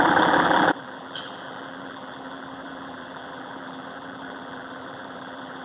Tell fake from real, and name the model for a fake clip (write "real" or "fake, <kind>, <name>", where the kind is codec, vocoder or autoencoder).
fake, vocoder, BigVGAN v2